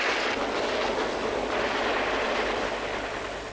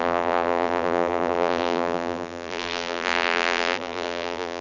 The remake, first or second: second